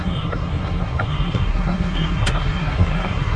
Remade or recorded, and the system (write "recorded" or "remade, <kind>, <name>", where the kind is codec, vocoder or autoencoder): remade, codec, SNAC